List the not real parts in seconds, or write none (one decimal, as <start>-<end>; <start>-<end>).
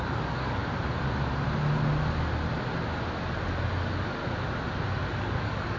0.0-0.6; 3.8-4.2; 5.2-5.8